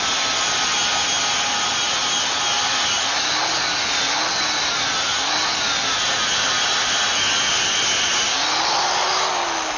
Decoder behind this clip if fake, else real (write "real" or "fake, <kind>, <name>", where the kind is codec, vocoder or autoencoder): real